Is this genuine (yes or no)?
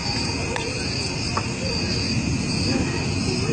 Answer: yes